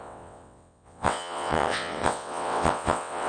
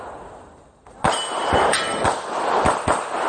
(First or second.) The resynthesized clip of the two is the first